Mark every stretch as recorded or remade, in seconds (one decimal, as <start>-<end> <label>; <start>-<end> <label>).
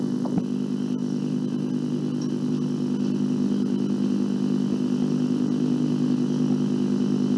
0.0-7.4 recorded